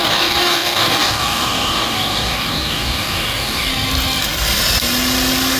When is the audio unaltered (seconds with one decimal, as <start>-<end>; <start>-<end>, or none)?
3.7-5.6